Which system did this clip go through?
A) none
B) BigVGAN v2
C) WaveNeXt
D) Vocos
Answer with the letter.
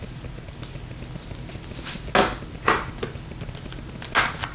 A